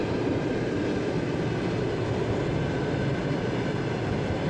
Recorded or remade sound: recorded